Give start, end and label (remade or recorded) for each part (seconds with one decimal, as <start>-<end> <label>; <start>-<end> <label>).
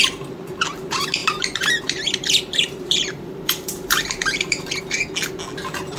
0.0-1.2 recorded; 1.2-4.8 remade; 4.8-6.0 recorded